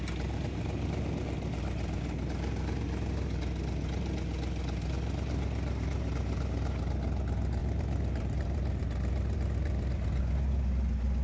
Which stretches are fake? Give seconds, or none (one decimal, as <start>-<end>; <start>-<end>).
7.6-10.2